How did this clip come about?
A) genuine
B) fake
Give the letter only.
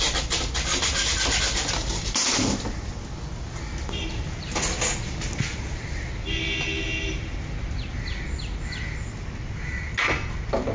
A